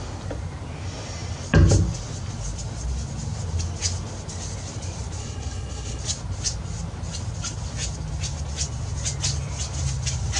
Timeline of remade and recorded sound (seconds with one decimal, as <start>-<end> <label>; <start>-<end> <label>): 0.0-5.2 recorded; 5.2-6.0 remade; 6.0-10.4 recorded